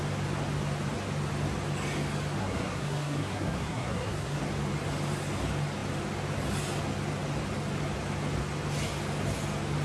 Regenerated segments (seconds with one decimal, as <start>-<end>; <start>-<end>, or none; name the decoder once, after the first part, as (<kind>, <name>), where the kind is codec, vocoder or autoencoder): 2.4-4.4 (codec, SNAC)